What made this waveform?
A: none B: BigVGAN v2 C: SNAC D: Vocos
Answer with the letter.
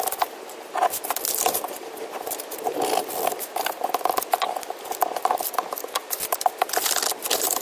A